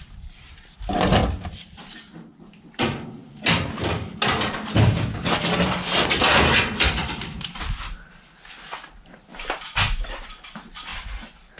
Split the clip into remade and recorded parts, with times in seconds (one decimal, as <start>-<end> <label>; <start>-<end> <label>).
0.0-1.2 remade; 1.2-2.4 recorded; 2.4-3.2 remade; 3.2-6.1 recorded; 6.1-10.9 remade; 10.9-11.6 recorded